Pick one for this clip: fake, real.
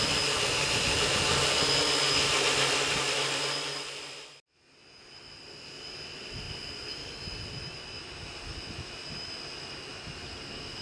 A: real